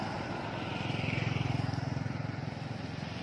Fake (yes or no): no